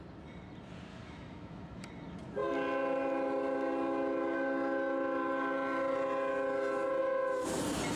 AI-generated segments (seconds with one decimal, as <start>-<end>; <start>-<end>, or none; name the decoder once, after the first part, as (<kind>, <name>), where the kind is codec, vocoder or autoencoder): 0.9-1.9 (autoencoder, DAC-VAE)